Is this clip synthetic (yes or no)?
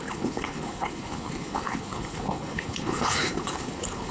yes